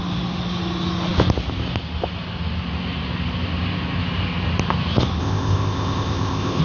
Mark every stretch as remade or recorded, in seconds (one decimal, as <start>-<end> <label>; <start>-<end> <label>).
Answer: 0.0-5.2 recorded; 5.2-6.6 remade

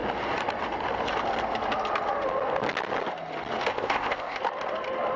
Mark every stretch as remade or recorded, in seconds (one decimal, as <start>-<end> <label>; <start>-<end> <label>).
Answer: 0.0-3.7 recorded; 3.7-4.4 remade; 4.4-5.2 recorded

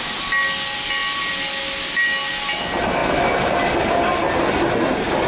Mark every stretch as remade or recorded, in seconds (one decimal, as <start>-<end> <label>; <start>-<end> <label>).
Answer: 0.0-5.3 recorded

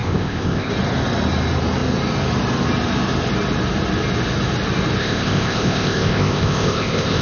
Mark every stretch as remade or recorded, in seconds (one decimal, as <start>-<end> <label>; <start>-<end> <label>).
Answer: 0.0-0.7 remade; 0.7-5.0 recorded; 5.0-7.2 remade

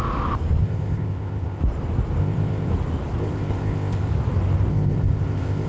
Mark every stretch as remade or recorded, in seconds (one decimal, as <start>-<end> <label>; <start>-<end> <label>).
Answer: 0.0-0.6 recorded; 0.6-1.6 remade; 1.6-2.2 recorded; 2.2-2.7 remade; 2.7-3.2 recorded; 3.2-4.1 remade; 4.1-4.7 recorded; 4.7-5.7 remade